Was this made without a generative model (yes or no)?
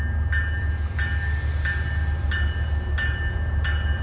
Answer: yes